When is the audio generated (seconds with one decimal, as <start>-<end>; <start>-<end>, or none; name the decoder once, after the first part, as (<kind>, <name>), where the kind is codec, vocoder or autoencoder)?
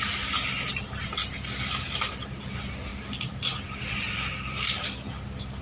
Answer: none